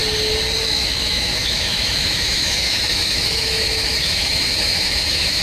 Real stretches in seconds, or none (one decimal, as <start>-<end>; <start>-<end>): 0.0-0.6